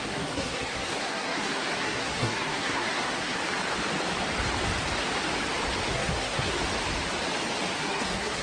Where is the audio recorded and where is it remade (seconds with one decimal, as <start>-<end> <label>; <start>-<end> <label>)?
0.0-3.4 remade; 3.4-5.9 recorded; 5.9-6.6 remade; 6.6-7.8 recorded; 7.8-8.4 remade